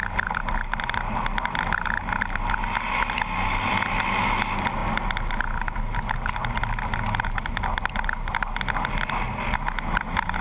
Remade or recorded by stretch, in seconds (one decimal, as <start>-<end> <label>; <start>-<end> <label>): 0.0-10.4 recorded